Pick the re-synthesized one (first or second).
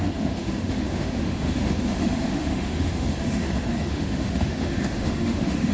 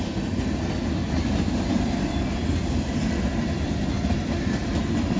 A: first